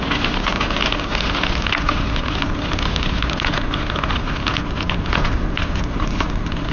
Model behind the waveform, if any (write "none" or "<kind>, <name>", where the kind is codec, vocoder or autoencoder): none